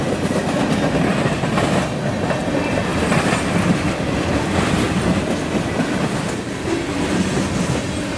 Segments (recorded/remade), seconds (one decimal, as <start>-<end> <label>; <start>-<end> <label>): 0.0-2.9 recorded; 2.9-3.9 remade; 3.9-8.2 recorded

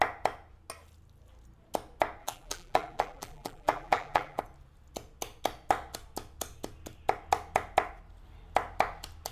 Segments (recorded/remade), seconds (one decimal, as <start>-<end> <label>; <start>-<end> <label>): 0.0-2.2 recorded; 2.2-4.4 remade; 4.4-9.3 recorded

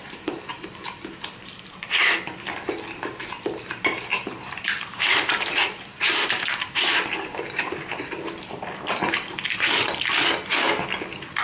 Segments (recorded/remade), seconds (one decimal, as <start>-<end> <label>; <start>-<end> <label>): 0.0-0.7 remade; 0.7-4.1 recorded; 4.1-7.4 remade; 7.4-11.4 recorded

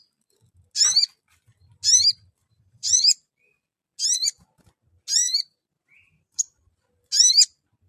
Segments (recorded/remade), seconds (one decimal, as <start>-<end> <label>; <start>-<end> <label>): 0.0-2.4 recorded; 2.4-3.3 remade; 3.3-5.2 recorded; 5.2-6.5 remade; 6.5-7.9 recorded

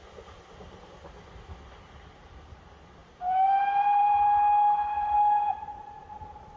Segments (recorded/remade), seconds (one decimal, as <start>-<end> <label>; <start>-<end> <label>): 0.0-6.6 recorded

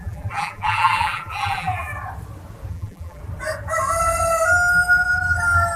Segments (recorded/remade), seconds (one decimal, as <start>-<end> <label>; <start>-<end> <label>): 0.0-1.9 remade; 1.9-2.7 recorded; 2.7-3.2 remade; 3.2-5.8 recorded

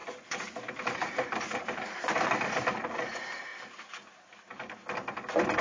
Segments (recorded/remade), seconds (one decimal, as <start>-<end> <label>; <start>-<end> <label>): 0.0-3.1 remade; 3.1-5.6 recorded